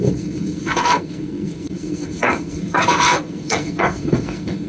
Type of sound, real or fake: fake